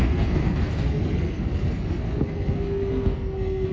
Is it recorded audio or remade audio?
remade